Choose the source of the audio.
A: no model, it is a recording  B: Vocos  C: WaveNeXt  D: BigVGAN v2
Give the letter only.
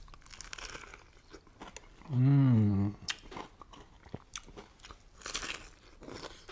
A